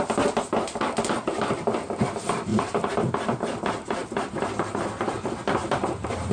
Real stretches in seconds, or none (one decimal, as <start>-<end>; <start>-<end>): 0.0-2.5; 3.6-4.0; 4.7-5.6